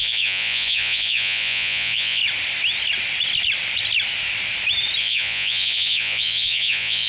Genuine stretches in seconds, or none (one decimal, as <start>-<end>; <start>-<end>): 2.2-5.0